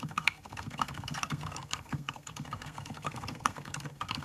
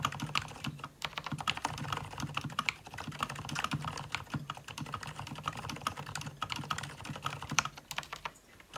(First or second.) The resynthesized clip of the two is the first